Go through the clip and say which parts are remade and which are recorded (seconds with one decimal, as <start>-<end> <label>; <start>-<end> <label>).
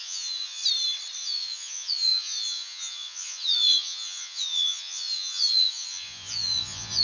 0.0-0.6 remade; 0.6-1.2 recorded; 1.2-7.0 remade